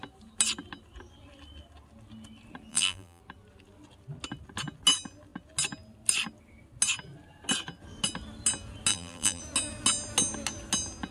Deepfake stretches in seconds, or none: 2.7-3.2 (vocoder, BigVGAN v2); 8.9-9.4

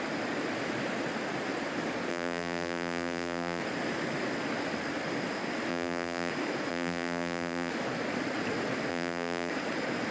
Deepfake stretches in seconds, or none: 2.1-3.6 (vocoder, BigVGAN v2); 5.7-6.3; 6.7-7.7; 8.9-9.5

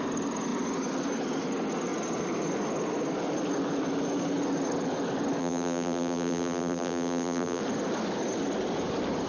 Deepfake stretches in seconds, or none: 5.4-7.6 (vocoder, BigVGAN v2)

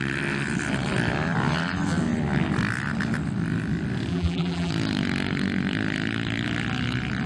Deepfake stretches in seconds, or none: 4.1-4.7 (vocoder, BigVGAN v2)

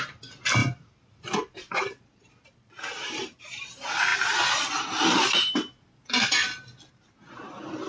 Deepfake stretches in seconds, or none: 0.6-3.4 (vocoder, BigVGAN v2)